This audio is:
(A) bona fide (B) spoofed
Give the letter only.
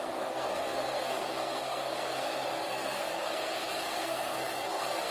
B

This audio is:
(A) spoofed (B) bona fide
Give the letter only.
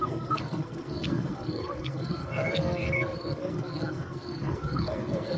A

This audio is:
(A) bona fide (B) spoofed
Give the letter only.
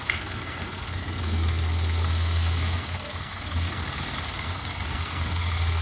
B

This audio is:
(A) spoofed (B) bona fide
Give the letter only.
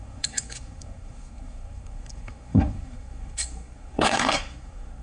A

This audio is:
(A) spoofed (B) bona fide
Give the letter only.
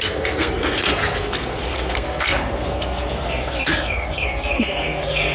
A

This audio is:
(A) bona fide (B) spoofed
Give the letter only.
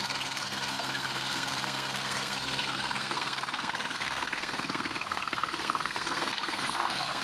B